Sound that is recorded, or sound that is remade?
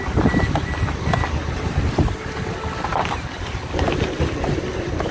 recorded